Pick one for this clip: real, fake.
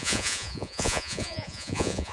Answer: fake